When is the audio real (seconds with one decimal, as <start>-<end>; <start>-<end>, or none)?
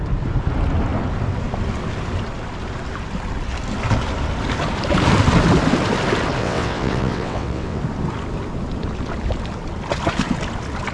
0.0-6.4; 7.8-10.9